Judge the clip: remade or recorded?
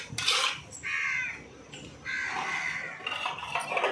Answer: recorded